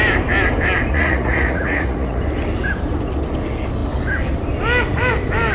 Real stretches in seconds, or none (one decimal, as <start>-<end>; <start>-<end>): 0.0-0.9; 2.2-5.5